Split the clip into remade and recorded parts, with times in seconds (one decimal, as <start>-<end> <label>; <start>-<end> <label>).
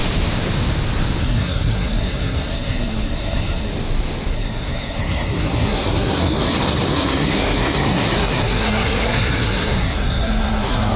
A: 0.0-1.2 recorded; 1.2-3.7 remade; 3.7-4.3 recorded; 4.3-11.0 remade